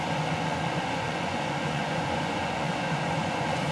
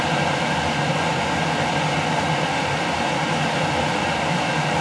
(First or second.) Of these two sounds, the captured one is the second